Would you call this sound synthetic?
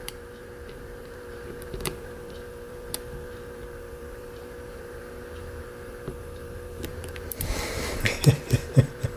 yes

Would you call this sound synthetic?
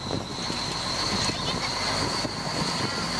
no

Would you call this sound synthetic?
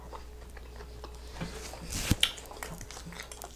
no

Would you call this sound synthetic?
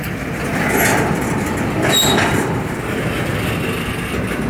no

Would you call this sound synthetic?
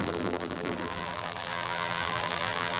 yes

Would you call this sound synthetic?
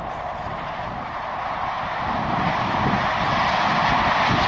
no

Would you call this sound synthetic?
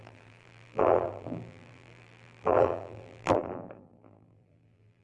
yes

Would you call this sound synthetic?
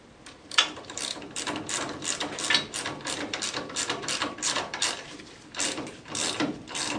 yes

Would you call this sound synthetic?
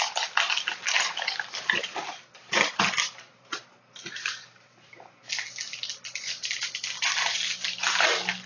no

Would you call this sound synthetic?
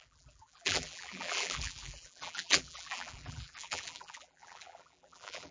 yes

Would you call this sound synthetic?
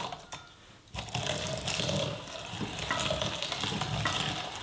no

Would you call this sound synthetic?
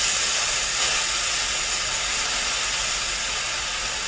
no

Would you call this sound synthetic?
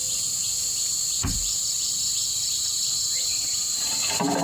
no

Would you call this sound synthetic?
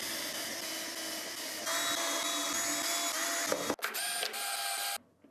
no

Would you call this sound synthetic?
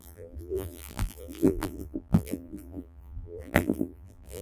yes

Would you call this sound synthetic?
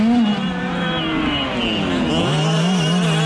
no